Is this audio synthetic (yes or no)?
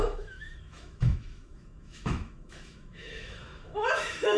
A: yes